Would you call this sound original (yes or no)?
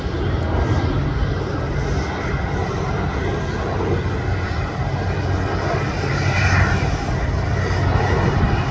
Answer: yes